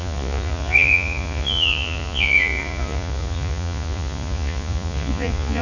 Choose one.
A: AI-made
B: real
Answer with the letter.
A